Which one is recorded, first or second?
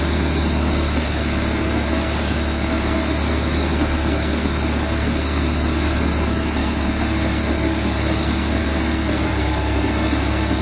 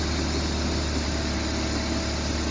second